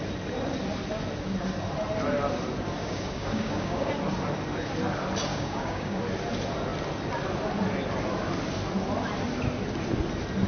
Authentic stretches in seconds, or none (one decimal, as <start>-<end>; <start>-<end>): 0.0-2.8; 3.9-5.3; 6.0-10.5